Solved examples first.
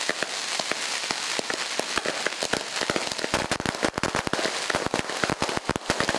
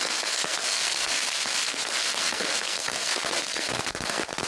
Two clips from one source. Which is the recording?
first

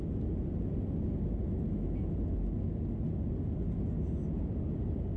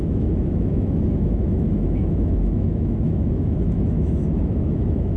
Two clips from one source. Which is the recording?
first